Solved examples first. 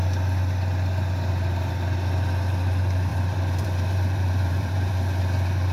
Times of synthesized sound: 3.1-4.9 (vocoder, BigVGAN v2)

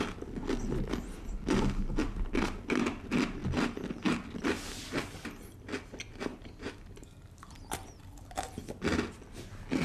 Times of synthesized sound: 2.0-2.8 (vocoder, BigVGAN v2); 6.3-8.0

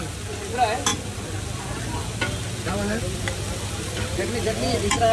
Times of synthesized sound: none

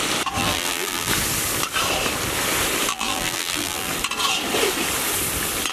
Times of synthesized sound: 0.4-1.1 (vocoder, BigVGAN v2); 2.9-3.9

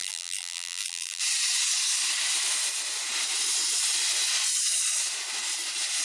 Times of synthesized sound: 0.0-1.2 (vocoder, BigVGAN v2)